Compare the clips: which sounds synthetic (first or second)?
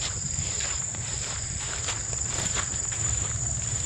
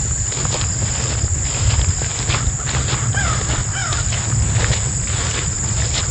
first